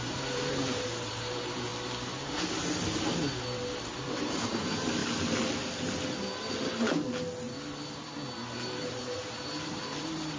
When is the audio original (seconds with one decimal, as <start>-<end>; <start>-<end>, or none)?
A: 1.7-4.5; 5.0-8.9